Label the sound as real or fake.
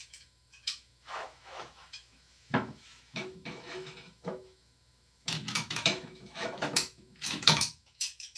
fake